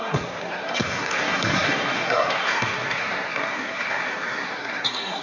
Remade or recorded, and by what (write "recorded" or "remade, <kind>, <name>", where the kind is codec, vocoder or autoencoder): remade, codec, SNAC